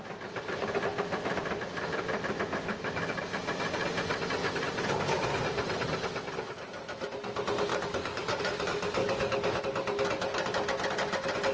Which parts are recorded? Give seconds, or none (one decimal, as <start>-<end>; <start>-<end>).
0.0-7.7; 8.4-9.0; 9.6-11.5